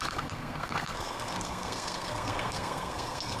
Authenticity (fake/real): fake